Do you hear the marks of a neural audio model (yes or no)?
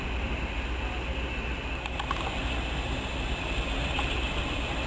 no